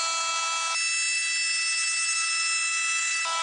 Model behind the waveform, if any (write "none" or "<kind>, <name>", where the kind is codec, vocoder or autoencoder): none